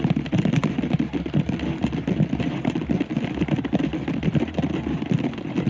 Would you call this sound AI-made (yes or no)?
no